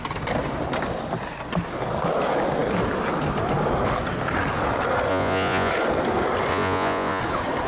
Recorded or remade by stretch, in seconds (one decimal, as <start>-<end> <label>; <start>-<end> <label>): 0.0-5.1 recorded; 5.1-5.7 remade; 5.7-6.5 recorded; 6.5-7.2 remade; 7.2-7.7 recorded